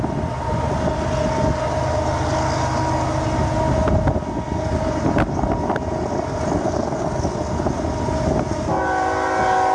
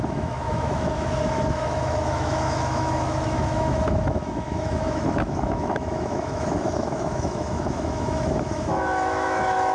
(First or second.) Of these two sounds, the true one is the first